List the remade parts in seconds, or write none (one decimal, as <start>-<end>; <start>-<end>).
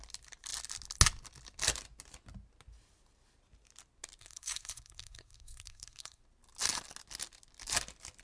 4.2-6.2